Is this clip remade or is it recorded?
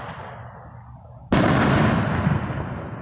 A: recorded